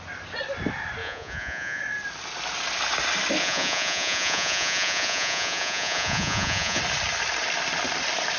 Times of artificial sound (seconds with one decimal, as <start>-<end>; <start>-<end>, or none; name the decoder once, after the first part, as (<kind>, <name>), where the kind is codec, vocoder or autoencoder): 1.0-1.8 (vocoder, Vocos); 3.4-6.8